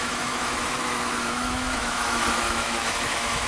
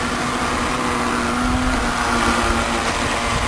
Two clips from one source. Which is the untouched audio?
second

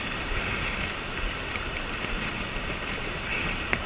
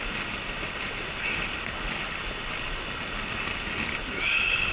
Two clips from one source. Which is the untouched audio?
second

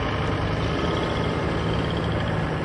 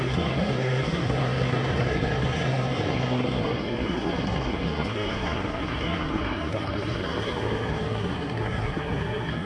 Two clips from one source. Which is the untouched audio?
first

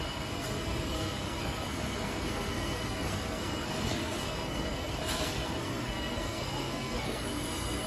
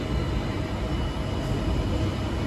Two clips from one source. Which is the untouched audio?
second